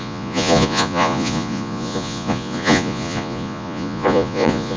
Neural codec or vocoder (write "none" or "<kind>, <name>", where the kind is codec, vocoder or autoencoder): vocoder, Vocos